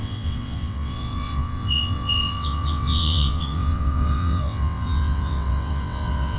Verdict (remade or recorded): remade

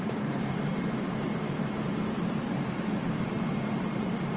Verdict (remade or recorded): remade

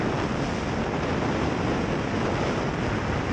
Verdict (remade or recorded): recorded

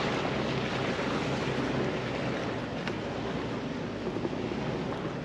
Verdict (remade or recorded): recorded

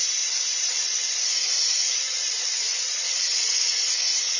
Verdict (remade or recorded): remade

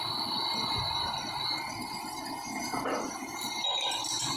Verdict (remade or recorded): recorded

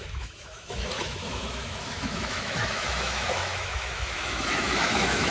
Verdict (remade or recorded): remade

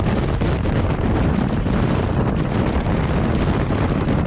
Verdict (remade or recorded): recorded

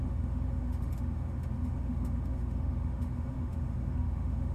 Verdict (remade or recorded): remade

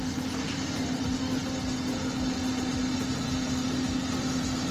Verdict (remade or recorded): recorded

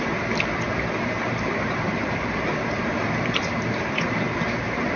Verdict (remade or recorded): remade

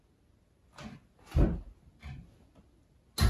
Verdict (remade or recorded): recorded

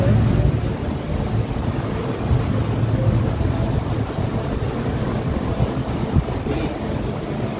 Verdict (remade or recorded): recorded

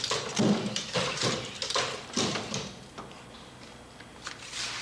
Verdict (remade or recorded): remade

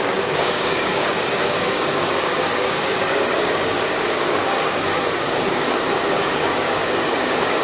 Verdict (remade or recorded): remade